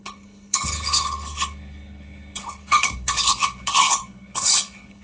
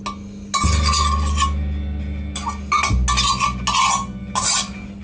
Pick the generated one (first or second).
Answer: first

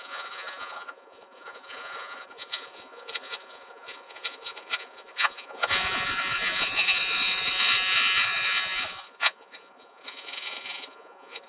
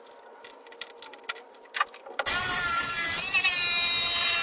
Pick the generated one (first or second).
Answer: first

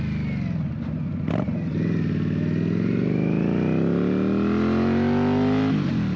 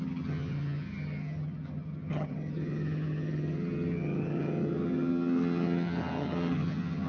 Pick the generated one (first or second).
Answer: second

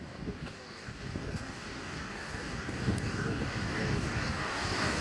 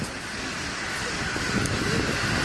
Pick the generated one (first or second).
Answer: first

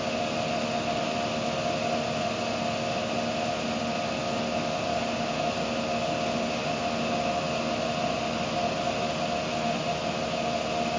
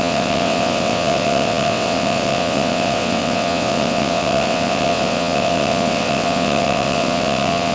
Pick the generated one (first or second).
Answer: second